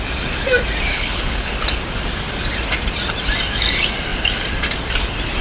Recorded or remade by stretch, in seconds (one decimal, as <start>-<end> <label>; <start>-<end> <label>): 0.0-0.9 recorded; 0.9-1.5 remade; 1.5-5.4 recorded